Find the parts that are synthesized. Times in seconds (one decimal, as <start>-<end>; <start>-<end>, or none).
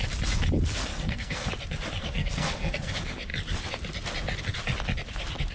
0.9-1.5; 2.0-2.9